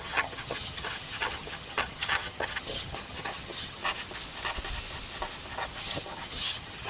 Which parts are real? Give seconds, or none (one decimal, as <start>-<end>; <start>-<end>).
3.8-5.8

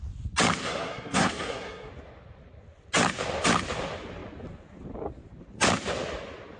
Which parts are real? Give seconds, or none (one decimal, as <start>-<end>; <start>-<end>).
0.0-0.6; 1.9-6.6

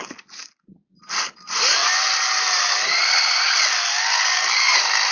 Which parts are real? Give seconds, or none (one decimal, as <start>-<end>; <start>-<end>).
0.0-5.1

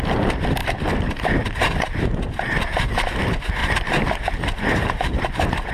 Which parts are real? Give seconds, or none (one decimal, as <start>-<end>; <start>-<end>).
0.0-0.6; 3.2-3.6

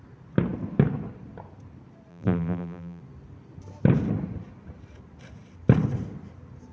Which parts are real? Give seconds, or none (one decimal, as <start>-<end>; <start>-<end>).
0.0-2.1; 3.0-6.7

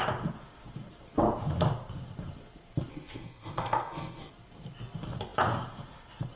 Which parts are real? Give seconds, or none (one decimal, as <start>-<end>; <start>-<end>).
0.0-2.9; 4.3-6.4

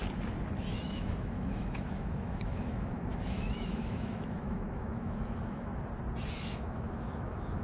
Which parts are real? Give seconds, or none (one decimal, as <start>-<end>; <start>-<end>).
0.0-0.7; 5.7-6.4